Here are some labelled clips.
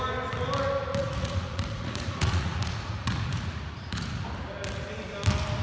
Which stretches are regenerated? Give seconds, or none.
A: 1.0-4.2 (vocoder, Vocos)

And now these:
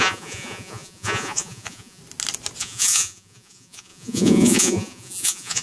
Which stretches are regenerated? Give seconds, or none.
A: 0.0-2.0 (vocoder, Vocos); 2.6-5.6

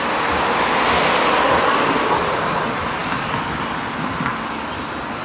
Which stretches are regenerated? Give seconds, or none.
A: none

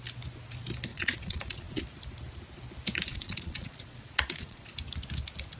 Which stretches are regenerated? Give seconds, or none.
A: 0.9-1.8 (vocoder, Vocos); 3.1-4.7

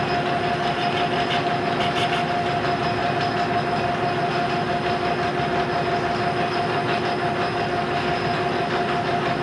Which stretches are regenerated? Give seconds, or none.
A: none

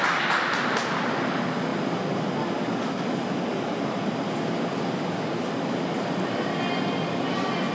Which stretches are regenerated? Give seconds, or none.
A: none

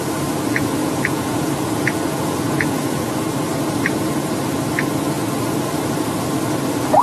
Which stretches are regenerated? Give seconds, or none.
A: 0.8-3.1 (vocoder, Vocos)